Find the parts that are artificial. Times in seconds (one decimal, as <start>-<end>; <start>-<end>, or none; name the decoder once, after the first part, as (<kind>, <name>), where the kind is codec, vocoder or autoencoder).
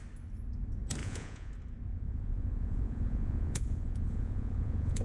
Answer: 1.0-1.5 (vocoder, Vocos); 1.9-5.0